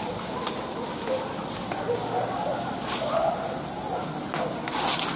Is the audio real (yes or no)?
yes